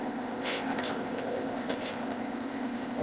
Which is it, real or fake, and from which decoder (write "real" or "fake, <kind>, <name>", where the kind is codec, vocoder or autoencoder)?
fake, codec, ZipCodec